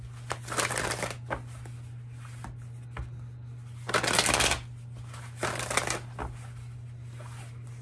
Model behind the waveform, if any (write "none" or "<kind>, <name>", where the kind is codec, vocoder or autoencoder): none